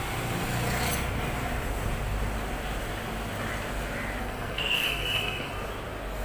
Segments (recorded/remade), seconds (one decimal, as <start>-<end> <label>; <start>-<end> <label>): 0.0-4.2 recorded; 4.2-5.5 remade; 5.5-6.2 recorded